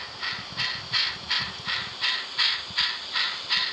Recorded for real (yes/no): yes